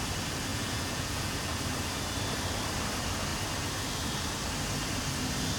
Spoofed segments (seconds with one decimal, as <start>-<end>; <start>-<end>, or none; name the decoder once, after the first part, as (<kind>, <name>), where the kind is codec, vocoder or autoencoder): 0.5-1.6 (vocoder, Vocos)